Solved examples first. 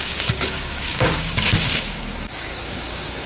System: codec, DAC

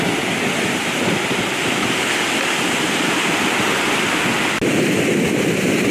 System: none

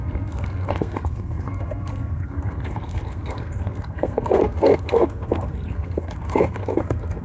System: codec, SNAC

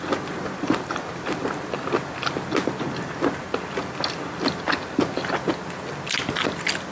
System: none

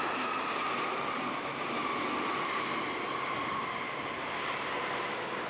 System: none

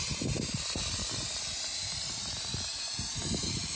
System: none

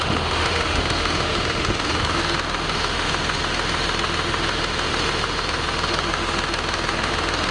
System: autoencoder, DAC-VAE